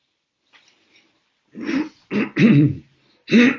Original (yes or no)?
yes